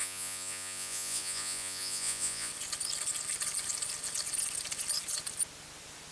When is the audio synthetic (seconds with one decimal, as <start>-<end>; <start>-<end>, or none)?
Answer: 0.0-2.5